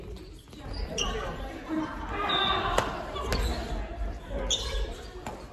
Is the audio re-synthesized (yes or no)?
no